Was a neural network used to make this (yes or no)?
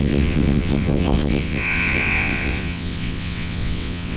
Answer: yes